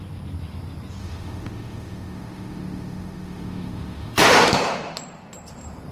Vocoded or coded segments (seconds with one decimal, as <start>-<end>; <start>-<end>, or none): 1.0-4.5